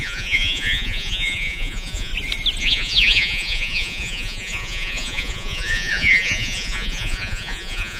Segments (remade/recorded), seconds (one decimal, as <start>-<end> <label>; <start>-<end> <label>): 0.0-2.1 remade; 2.1-2.6 recorded; 2.6-8.0 remade